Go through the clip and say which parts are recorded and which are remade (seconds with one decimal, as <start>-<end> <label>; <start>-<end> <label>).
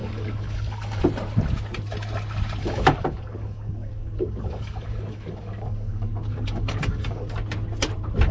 0.0-1.0 remade; 1.0-2.6 recorded; 2.6-7.2 remade; 7.2-8.3 recorded